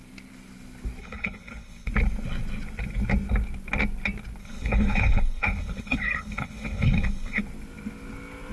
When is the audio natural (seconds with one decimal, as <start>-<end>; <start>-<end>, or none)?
0.0-1.0; 1.9-4.4; 7.4-8.5